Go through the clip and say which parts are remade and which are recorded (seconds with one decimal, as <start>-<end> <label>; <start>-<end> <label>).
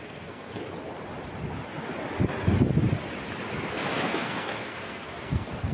0.0-0.6 remade; 0.6-3.7 recorded; 3.7-5.7 remade